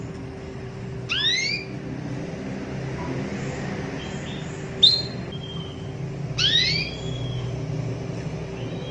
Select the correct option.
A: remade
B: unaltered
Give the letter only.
B